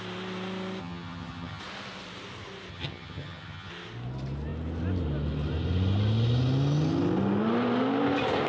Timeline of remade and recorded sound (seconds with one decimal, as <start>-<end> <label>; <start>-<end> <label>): 0.0-0.8 recorded; 0.8-1.6 remade; 1.6-2.7 recorded; 2.7-3.7 remade; 3.7-8.5 recorded